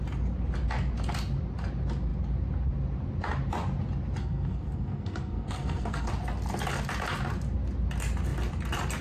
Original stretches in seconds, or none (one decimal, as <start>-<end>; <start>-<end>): 0.0-4.2; 6.1-9.0